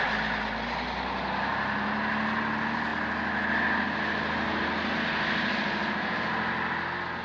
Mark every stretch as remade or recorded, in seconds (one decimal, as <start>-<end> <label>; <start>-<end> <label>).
0.0-7.2 recorded